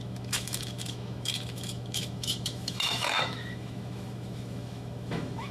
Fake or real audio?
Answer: fake